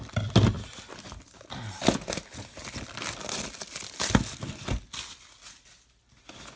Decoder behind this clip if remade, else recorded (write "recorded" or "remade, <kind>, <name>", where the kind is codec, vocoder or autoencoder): recorded